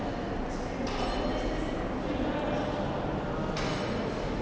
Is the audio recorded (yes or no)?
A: yes